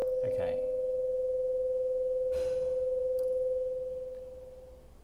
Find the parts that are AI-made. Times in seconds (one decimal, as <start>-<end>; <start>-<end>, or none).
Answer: none